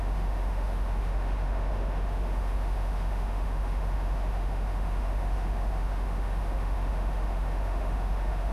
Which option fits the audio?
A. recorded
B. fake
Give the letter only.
B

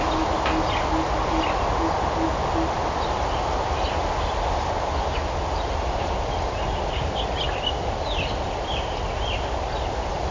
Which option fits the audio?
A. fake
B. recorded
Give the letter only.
B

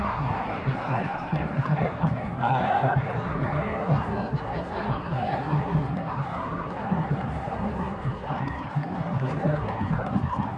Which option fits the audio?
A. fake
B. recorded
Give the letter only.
A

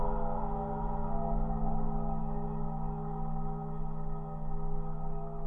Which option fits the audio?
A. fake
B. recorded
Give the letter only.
A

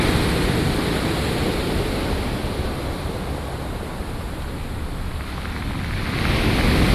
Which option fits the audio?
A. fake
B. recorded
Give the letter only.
B